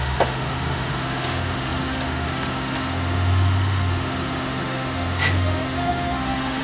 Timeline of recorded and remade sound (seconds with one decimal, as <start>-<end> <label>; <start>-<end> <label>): 0.0-6.6 remade